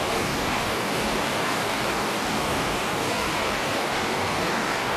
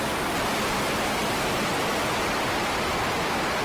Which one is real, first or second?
second